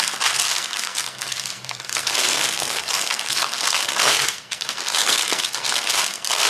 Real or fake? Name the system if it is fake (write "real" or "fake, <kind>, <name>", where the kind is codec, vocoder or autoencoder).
fake, codec, SNAC